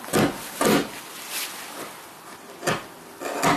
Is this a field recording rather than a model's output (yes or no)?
yes